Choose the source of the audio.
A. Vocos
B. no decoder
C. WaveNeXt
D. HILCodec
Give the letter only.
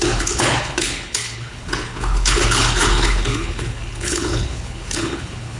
D